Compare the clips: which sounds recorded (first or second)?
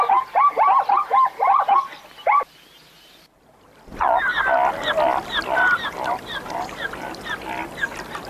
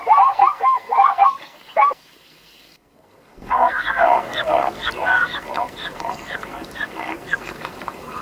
first